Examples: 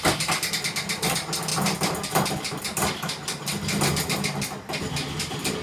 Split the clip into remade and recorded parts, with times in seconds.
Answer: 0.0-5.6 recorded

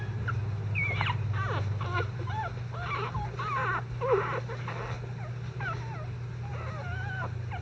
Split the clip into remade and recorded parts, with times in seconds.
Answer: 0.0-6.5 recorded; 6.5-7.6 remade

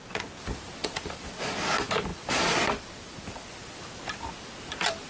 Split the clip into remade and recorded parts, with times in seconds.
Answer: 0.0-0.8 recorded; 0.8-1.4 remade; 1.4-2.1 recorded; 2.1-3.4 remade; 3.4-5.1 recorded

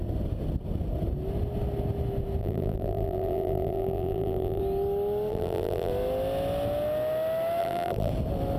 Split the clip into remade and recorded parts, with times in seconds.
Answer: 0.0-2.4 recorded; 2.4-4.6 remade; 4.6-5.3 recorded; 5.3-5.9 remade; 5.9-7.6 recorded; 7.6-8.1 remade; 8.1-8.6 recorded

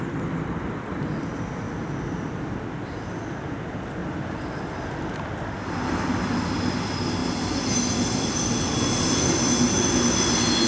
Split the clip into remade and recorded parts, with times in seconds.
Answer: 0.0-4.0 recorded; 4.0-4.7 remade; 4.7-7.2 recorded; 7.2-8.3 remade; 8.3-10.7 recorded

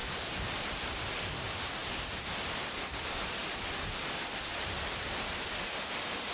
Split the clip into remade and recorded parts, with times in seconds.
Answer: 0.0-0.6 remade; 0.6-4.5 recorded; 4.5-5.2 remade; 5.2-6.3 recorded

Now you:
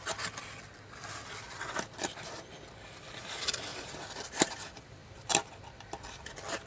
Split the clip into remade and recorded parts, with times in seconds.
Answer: 0.0-3.7 recorded; 3.7-4.6 remade; 4.6-5.0 recorded; 5.0-5.5 remade; 5.5-6.7 recorded

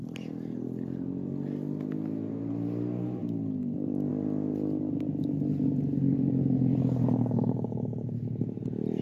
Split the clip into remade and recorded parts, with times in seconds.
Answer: 0.0-9.0 recorded